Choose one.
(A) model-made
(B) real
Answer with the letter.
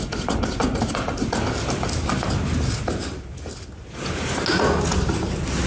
B